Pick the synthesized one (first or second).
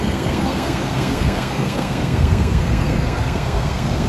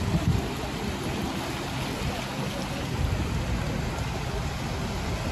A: first